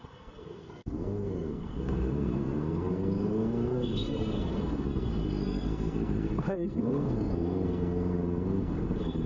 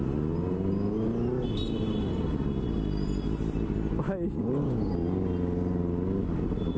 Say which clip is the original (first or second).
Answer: second